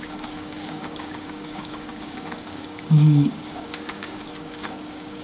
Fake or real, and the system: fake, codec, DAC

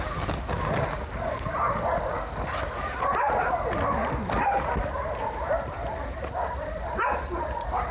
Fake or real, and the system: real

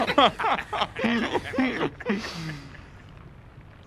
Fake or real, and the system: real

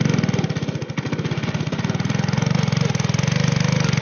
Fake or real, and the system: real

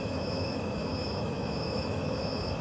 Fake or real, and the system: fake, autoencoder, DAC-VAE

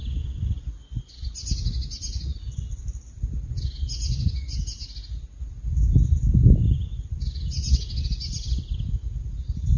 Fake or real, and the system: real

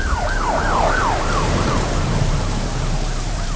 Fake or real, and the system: fake, vocoder, BigVGAN v2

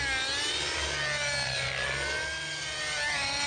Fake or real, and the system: real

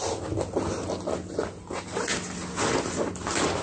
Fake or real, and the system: real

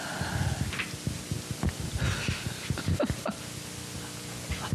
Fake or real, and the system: real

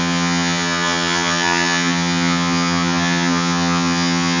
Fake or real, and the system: fake, vocoder, HiFi-GAN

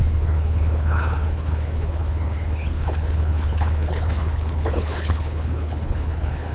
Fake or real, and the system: fake, codec, HILCodec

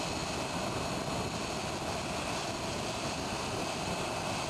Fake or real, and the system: real